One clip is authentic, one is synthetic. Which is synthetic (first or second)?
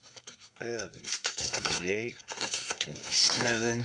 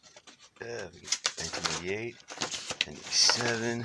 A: first